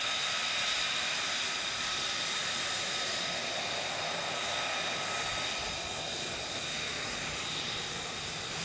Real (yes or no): yes